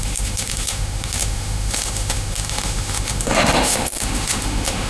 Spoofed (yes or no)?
yes